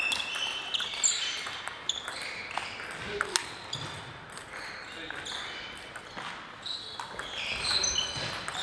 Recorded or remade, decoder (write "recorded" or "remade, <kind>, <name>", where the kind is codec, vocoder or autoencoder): recorded